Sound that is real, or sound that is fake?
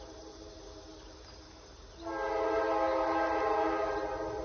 real